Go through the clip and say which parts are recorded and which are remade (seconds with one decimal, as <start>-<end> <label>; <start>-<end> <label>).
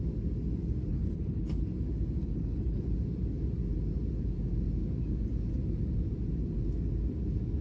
0.0-0.9 recorded; 0.9-1.7 remade; 1.7-2.2 recorded; 2.2-2.9 remade; 2.9-7.6 recorded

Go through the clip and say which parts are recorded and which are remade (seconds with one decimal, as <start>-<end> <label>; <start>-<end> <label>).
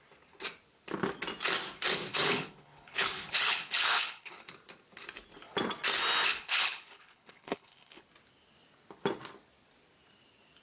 0.0-2.1 recorded; 2.1-4.5 remade; 4.5-6.3 recorded; 6.3-8.0 remade; 8.0-10.6 recorded